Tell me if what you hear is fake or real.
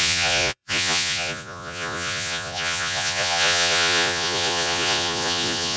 fake